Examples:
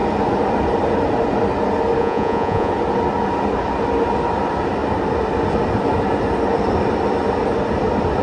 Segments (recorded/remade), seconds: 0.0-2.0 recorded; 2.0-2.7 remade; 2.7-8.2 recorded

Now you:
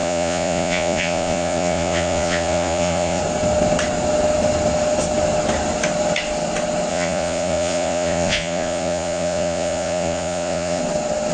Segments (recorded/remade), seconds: 0.0-3.2 remade; 3.2-6.9 recorded; 6.9-10.8 remade; 10.8-11.3 recorded

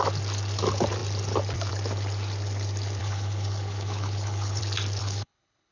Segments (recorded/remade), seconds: 0.0-3.0 recorded; 3.0-4.6 remade; 4.6-5.0 recorded; 5.0-5.7 remade